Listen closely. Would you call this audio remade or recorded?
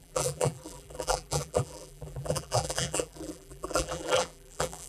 remade